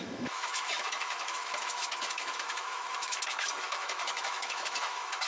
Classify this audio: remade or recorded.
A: remade